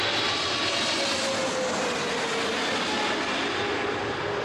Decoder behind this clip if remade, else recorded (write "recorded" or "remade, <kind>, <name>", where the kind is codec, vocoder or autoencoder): recorded